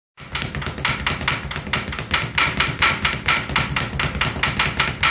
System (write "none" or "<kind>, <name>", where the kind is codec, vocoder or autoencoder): none